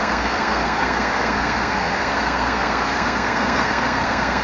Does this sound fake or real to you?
fake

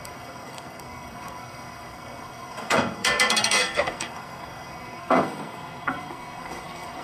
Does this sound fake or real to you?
fake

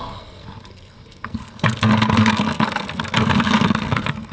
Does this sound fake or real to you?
fake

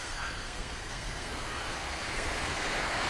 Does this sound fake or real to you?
fake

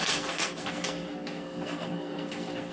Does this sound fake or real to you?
fake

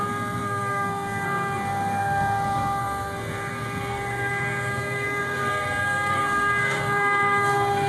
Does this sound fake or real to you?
fake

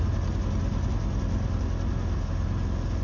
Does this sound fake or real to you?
real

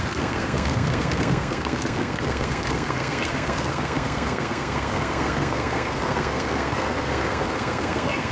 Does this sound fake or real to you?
fake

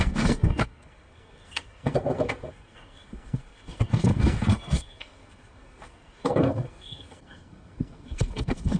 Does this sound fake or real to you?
fake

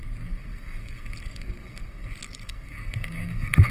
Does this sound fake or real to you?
fake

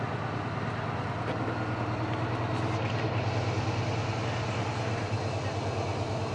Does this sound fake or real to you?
real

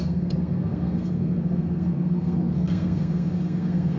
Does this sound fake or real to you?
fake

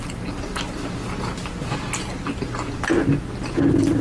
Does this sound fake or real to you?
real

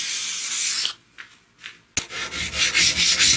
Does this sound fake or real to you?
real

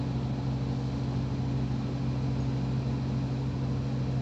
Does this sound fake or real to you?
real